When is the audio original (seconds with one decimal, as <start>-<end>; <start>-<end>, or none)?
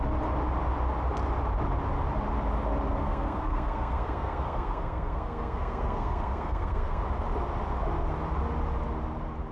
0.0-3.0; 7.0-9.5